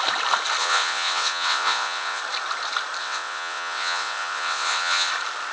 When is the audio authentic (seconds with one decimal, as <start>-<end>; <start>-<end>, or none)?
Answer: 0.0-0.6; 2.2-3.0; 5.1-5.5